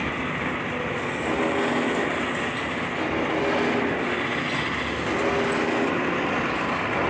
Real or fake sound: real